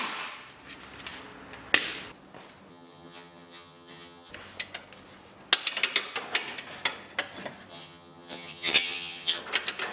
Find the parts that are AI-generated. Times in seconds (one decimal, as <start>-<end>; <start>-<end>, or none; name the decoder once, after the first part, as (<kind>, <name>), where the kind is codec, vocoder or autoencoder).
2.7-4.3 (vocoder, HiFi-GAN); 7.7-9.4